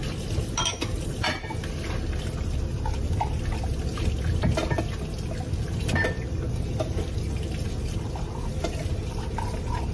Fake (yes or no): no